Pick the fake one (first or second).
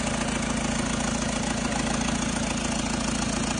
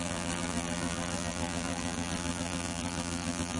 second